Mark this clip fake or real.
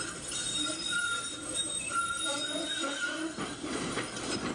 real